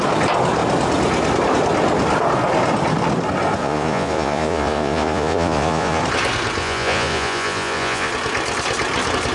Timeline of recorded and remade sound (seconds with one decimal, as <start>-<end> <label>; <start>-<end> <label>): 0.0-3.6 recorded; 3.6-6.0 remade; 6.0-6.6 recorded; 6.6-8.1 remade; 8.1-9.3 recorded